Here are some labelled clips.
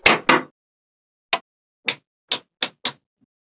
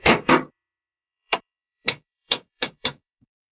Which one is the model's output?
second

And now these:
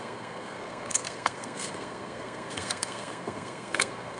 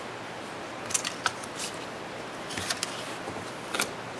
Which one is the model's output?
first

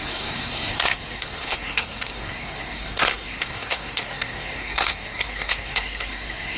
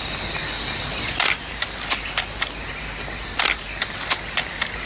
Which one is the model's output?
first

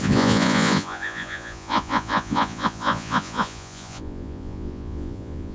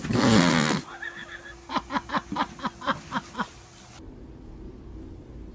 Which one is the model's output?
first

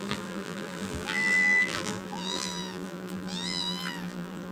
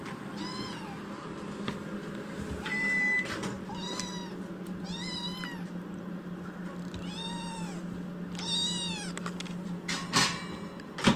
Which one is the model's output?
first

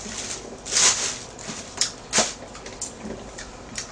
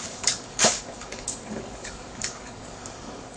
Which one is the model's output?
second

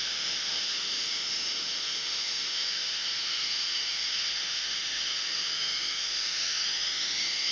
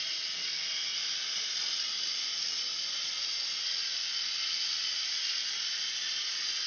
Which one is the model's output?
first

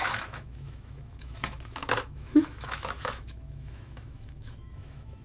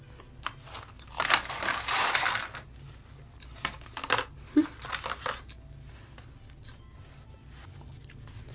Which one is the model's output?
first